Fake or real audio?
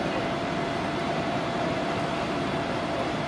fake